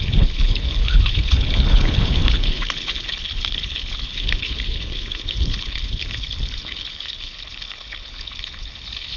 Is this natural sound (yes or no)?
no